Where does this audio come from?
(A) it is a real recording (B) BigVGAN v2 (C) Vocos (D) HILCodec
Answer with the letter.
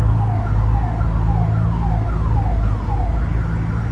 A